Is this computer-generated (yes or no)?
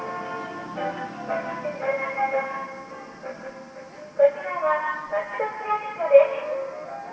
no